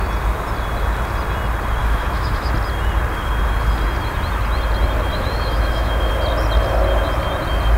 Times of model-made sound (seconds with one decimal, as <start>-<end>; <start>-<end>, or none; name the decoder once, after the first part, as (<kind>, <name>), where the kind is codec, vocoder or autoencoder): 1.8-2.5 (autoencoder, DAC-VAE); 5.1-6.1

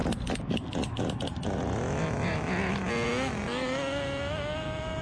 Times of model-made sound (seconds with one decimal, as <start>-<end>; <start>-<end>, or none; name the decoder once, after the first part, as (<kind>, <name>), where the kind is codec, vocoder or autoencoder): none

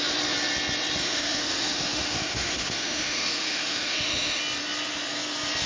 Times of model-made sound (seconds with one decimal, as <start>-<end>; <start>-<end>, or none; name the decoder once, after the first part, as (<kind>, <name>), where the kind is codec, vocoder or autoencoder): 1.0-4.4 (autoencoder, DAC-VAE)